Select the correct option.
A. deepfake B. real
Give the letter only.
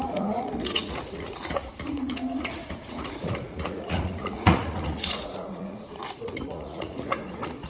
A